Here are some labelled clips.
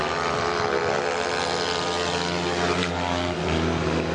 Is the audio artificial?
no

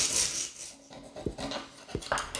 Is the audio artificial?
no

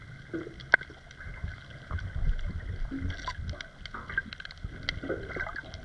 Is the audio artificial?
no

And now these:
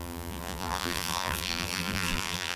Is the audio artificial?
yes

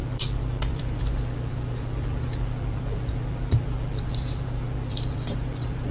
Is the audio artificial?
yes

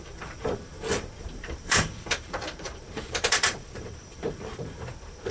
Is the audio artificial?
yes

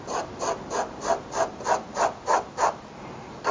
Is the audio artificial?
no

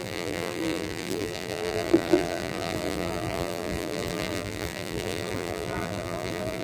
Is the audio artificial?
yes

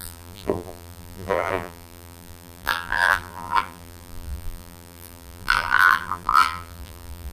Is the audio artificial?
yes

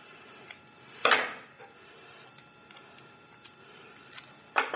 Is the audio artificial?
no